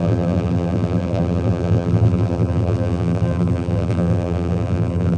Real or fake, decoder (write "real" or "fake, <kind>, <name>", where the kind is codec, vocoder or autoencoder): fake, vocoder, BigVGAN v2